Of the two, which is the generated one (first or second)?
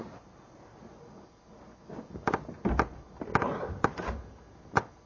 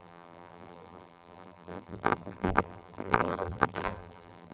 second